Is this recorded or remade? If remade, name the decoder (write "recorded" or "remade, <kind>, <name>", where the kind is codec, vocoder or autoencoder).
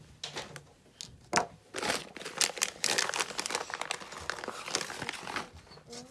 recorded